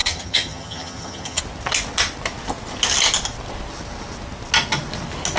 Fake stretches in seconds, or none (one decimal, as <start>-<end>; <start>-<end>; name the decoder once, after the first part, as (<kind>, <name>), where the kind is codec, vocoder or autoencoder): 0.0-1.4 (vocoder, HiFi-GAN)